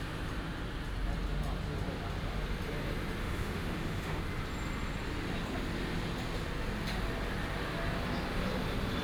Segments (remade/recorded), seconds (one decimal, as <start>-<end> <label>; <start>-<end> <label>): 0.0-3.2 recorded; 3.2-4.2 remade; 4.2-9.0 recorded